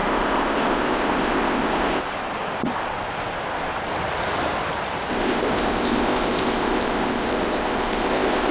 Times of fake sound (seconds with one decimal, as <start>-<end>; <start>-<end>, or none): 0.0-2.0; 5.1-8.5